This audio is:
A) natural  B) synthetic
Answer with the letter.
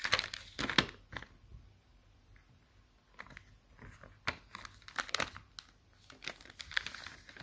A